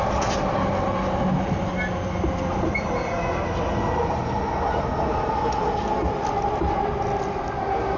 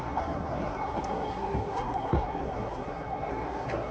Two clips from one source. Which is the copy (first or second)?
second